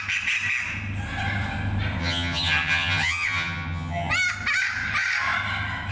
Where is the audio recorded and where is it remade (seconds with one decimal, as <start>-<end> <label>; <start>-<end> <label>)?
0.0-2.0 recorded; 2.0-4.1 remade; 4.1-5.9 recorded